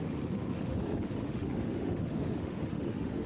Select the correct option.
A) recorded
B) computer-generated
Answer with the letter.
B